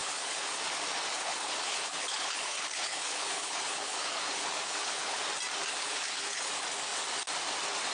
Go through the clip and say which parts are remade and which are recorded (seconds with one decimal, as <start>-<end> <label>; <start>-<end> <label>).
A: 0.0-0.5 remade; 0.5-1.1 recorded; 1.1-5.2 remade; 5.2-5.8 recorded; 5.8-6.5 remade; 6.5-7.9 recorded